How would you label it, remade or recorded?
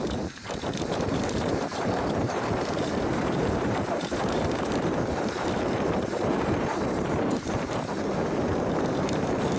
remade